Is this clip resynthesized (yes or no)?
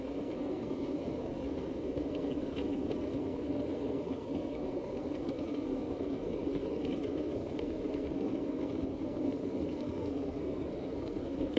yes